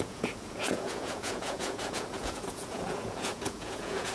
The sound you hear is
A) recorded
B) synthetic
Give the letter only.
B